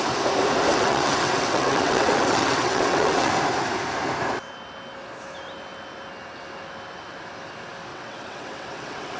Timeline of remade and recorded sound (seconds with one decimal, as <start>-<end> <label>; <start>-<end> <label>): 0.0-0.7 recorded; 0.7-3.3 remade; 3.3-7.9 recorded; 7.9-9.2 remade

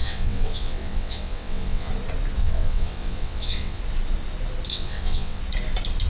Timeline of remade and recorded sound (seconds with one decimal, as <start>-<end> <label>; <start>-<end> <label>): 0.0-1.9 remade; 1.9-2.4 recorded; 2.4-3.8 remade; 3.8-4.7 recorded; 4.7-5.4 remade; 5.4-6.1 recorded

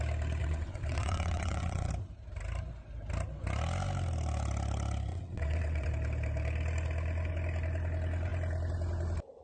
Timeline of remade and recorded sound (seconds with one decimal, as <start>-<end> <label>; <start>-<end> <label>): 0.0-0.4 recorded; 0.4-1.9 remade; 1.9-5.1 recorded; 5.1-5.9 remade; 5.9-9.4 recorded

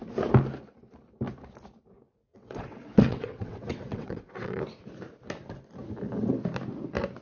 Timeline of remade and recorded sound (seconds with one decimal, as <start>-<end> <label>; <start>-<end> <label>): 0.0-2.3 recorded; 2.3-4.6 remade; 4.6-7.2 recorded

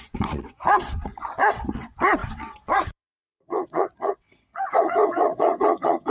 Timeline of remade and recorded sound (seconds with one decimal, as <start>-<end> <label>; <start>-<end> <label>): 0.0-6.1 remade

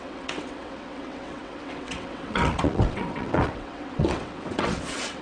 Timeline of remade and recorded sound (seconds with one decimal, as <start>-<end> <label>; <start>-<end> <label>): 0.0-5.2 remade

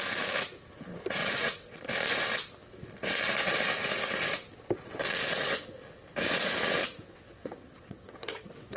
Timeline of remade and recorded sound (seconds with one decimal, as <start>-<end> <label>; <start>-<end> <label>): 0.0-1.2 recorded; 1.2-1.8 remade; 1.8-6.8 recorded; 6.8-8.8 remade